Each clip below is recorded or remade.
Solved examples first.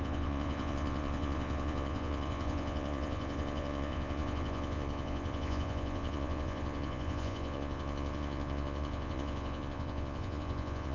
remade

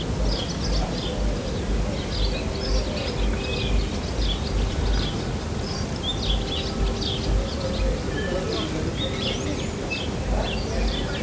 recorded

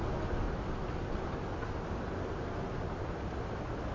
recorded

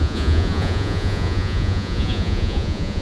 remade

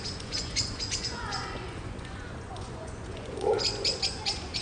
remade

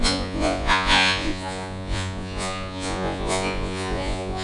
remade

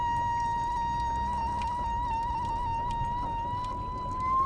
recorded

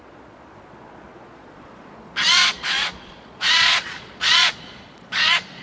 remade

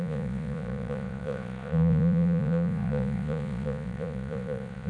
remade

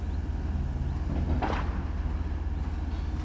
recorded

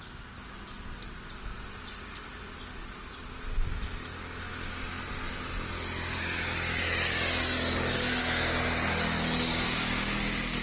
recorded